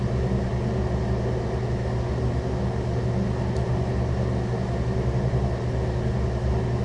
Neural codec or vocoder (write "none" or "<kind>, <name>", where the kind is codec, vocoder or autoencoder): none